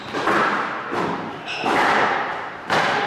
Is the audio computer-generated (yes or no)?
yes